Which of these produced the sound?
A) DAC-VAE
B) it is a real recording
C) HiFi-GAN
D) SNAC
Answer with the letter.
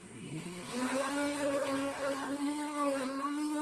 D